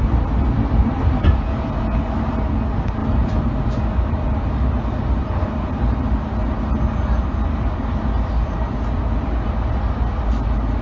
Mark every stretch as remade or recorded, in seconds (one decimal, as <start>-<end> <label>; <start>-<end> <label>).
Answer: 0.0-10.8 recorded